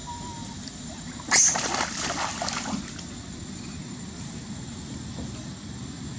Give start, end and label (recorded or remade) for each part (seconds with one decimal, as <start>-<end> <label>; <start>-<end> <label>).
0.0-6.2 recorded